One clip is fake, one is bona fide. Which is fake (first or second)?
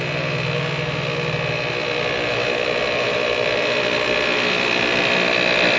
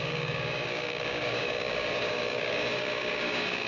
second